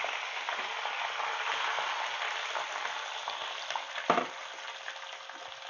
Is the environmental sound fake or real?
real